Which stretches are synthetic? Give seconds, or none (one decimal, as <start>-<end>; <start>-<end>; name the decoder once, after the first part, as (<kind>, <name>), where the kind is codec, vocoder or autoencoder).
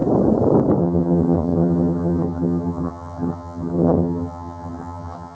0.8-5.3 (vocoder, HiFi-GAN)